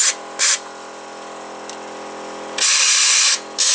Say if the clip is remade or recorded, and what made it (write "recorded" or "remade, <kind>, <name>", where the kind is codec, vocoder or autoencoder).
recorded